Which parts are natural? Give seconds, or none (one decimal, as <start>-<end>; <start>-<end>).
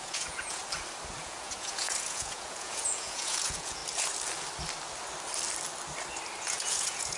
0.6-1.1; 3.8-6.4